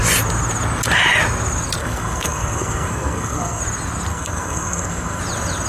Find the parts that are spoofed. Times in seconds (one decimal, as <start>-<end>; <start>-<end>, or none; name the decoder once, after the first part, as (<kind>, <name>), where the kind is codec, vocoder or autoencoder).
1.8-3.6 (codec, SNAC); 4.1-5.2